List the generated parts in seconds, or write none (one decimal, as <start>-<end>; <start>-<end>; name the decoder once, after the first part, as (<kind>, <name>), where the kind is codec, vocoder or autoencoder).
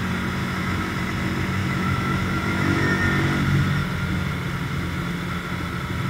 0.4-0.9 (autoencoder, DAC-VAE); 1.6-3.0